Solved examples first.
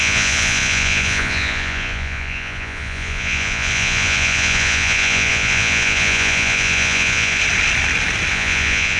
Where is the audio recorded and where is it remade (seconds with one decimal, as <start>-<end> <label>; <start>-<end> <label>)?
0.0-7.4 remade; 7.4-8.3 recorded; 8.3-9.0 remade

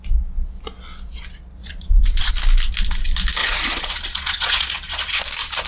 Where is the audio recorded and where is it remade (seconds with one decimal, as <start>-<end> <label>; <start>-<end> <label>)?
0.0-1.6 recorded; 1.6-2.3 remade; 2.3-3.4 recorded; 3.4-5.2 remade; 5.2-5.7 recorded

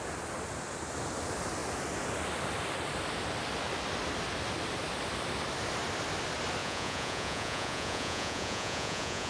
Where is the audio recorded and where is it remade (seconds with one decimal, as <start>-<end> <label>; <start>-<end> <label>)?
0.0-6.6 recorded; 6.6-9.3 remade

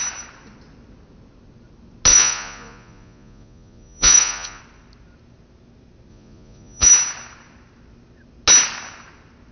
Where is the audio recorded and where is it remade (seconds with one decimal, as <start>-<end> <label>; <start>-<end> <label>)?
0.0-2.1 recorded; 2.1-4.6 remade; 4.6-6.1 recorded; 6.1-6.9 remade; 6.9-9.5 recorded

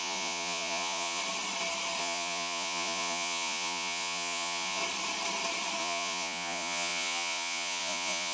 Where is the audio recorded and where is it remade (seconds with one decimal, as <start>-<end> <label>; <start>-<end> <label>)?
0.0-1.2 remade; 1.2-2.0 recorded; 2.0-4.8 remade; 4.8-5.8 recorded; 5.8-8.3 remade